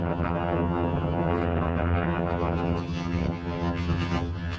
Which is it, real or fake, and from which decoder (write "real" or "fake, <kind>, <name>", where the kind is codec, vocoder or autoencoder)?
fake, vocoder, HiFi-GAN